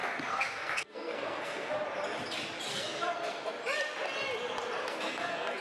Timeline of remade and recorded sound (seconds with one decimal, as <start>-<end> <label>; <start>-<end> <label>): 0.0-1.7 remade; 1.7-2.7 recorded; 2.7-3.5 remade; 3.5-4.8 recorded; 4.8-5.6 remade